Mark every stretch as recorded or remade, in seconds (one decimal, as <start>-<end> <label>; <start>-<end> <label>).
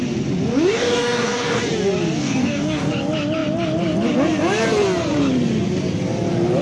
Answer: 0.0-0.5 recorded; 0.5-1.6 remade; 1.6-2.2 recorded; 2.2-2.9 remade; 2.9-6.6 recorded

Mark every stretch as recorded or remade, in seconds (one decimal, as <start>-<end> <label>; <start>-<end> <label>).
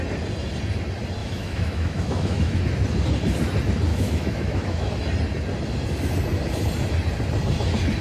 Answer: 0.0-1.2 recorded; 1.2-2.6 remade; 2.6-3.9 recorded; 3.9-4.9 remade; 4.9-8.0 recorded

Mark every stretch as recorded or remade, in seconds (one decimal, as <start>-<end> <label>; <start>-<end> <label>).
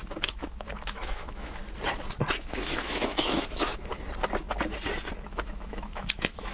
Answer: 0.0-1.6 remade; 1.6-2.4 recorded; 2.4-3.9 remade; 3.9-5.3 recorded; 5.3-6.5 remade